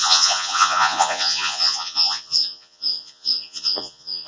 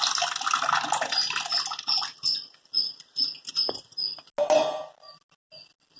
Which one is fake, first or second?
first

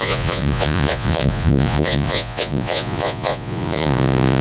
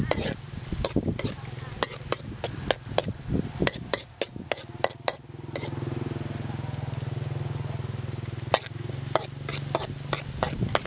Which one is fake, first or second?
first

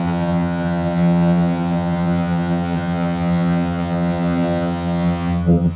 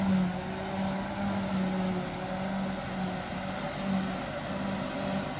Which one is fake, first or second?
first